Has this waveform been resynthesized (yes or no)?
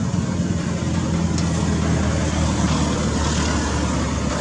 no